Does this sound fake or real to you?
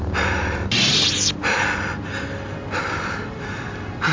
real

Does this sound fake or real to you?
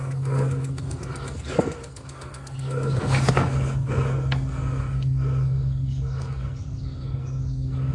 fake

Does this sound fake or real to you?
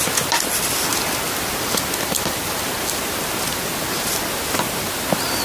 real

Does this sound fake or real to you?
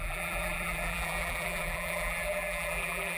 fake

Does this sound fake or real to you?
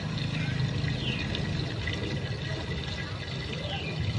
real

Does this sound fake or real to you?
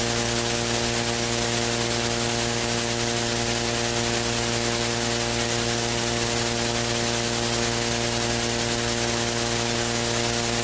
real